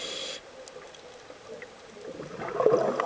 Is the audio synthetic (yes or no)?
no